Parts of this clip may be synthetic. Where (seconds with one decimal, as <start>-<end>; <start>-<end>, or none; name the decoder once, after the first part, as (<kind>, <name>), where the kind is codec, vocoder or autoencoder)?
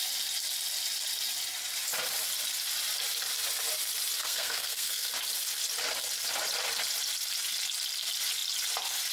4.2-5.1 (codec, SNAC)